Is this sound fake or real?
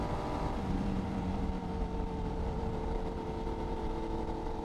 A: fake